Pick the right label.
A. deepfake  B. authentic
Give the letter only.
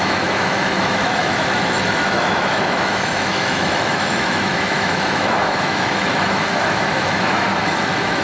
A